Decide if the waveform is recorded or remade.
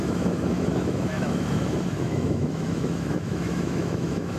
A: remade